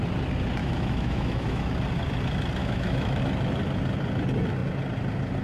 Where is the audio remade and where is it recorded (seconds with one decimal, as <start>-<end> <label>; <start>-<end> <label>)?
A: 0.0-0.6 recorded; 0.6-1.7 remade; 1.7-2.6 recorded; 2.6-3.2 remade; 3.2-5.4 recorded